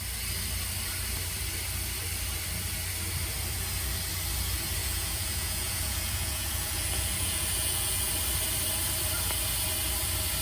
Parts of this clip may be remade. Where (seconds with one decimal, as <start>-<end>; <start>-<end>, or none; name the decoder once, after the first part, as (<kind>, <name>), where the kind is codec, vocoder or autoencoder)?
4.8-8.1 (vocoder, Vocos)